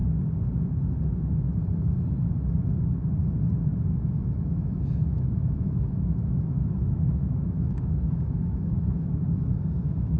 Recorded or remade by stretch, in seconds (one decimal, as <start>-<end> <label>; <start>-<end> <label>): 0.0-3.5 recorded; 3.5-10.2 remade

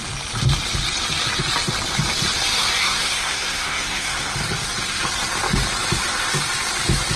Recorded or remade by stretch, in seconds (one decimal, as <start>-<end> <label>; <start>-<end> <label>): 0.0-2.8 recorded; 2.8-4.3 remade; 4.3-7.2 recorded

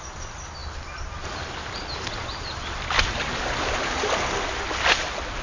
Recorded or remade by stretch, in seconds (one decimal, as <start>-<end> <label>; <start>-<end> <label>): 0.0-5.4 recorded

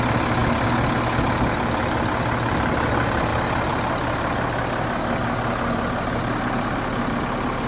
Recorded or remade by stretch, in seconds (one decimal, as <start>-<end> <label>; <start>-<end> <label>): 0.0-7.7 recorded